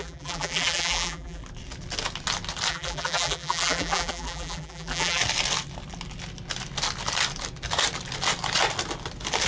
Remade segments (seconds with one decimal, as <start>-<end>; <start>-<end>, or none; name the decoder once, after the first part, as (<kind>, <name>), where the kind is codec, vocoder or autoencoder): 0.0-1.4 (vocoder, BigVGAN v2); 2.7-5.2